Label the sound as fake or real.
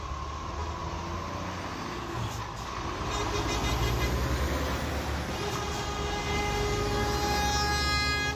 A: real